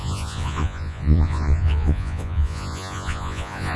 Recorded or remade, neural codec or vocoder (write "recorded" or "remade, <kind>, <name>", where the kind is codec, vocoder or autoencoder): remade, vocoder, Vocos